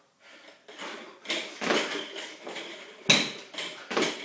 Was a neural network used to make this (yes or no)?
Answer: no